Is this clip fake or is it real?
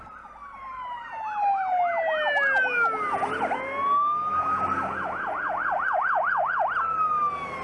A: real